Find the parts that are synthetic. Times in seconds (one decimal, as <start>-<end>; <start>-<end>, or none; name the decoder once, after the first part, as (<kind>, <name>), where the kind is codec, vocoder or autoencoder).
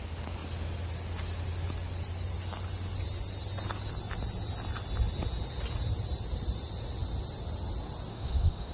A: 8.1-8.7 (autoencoder, DAC-VAE)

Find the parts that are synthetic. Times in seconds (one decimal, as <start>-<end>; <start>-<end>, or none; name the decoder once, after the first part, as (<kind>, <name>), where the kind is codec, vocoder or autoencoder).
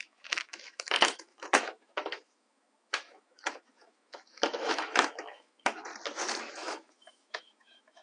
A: 0.0-5.9 (autoencoder, DAC-VAE); 6.4-8.0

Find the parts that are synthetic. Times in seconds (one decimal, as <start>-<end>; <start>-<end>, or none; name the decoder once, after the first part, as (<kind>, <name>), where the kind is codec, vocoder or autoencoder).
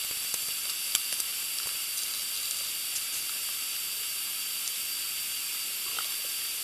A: none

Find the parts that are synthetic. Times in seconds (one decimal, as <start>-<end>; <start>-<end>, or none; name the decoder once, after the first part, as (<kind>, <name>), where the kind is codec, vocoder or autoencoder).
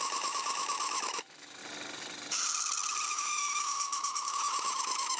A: 0.0-1.6 (autoencoder, DAC-VAE); 3.1-5.2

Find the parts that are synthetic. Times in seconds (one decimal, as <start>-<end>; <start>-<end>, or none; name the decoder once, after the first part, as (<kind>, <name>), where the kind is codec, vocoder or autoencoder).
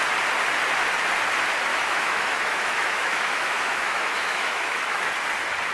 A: 1.7-5.1 (autoencoder, DAC-VAE)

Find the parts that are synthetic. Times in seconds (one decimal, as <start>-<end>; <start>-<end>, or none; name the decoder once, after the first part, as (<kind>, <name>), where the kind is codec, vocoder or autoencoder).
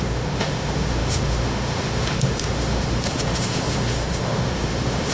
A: 0.0-5.1 (autoencoder, DAC-VAE)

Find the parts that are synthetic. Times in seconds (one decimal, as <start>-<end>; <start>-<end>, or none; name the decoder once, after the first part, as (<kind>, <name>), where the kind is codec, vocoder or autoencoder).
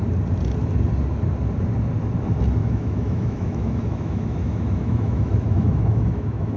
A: 2.6-6.6 (autoencoder, DAC-VAE)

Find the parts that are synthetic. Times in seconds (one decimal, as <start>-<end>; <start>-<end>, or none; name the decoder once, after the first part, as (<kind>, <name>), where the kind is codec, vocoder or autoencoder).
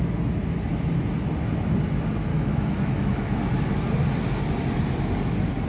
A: 2.3-3.7 (autoencoder, DAC-VAE)